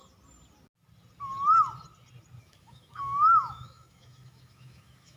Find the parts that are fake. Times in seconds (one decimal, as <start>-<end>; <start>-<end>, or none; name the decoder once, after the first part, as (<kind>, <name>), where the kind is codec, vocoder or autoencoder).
2.4-5.2 (autoencoder, DAC-VAE)